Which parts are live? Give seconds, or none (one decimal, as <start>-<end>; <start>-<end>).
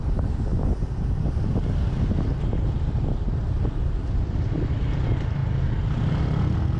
0.5-3.8; 5.4-6.2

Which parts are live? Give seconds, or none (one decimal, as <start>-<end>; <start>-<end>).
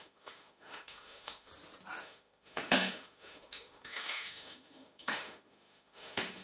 1.5-2.0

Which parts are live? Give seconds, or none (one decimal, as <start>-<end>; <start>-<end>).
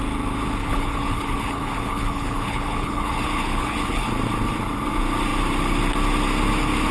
0.0-0.6; 4.1-6.9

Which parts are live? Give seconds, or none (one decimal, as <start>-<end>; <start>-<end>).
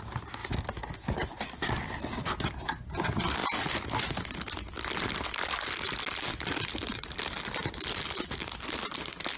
0.0-9.4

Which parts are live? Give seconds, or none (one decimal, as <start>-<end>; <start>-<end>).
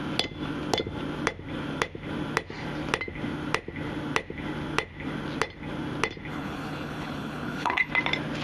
0.0-6.3; 7.9-8.4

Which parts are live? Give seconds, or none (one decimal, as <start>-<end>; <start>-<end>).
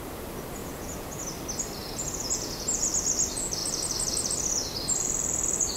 0.0-0.6; 1.2-1.8; 2.9-5.8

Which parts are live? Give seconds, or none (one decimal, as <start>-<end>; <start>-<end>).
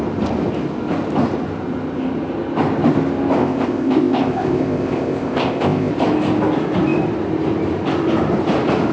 0.0-3.4; 5.9-8.9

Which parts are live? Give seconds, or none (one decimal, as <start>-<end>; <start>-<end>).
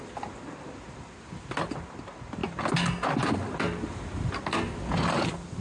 0.0-5.6